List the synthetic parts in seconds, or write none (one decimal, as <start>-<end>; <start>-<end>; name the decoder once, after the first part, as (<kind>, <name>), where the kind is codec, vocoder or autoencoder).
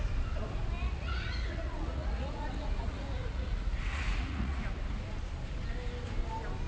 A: 0.8-4.8 (vocoder, Vocos)